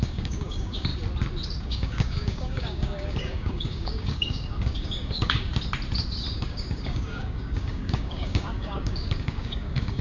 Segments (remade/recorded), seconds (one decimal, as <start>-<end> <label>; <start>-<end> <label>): 0.0-0.9 remade; 0.9-1.6 recorded; 1.6-5.5 remade; 5.5-6.3 recorded; 6.3-10.0 remade